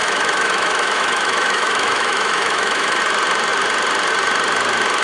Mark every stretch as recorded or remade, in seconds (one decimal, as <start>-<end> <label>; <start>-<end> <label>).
0.0-3.0 remade; 3.0-5.0 recorded